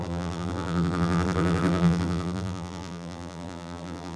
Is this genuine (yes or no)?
no